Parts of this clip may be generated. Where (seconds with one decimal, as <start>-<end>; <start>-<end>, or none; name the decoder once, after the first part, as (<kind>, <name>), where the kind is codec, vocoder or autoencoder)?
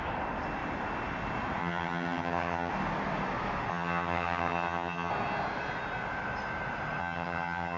1.6-2.7 (vocoder, HiFi-GAN); 3.7-5.1; 7.0-7.8